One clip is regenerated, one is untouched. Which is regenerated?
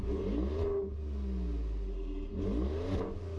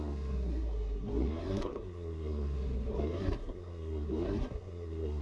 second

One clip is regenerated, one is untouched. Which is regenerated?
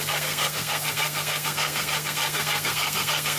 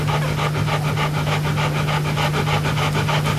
first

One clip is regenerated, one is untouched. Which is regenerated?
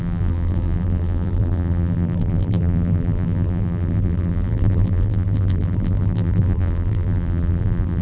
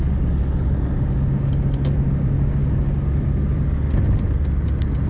first